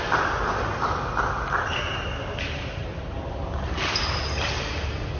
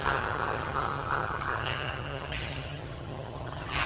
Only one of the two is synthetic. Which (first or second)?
second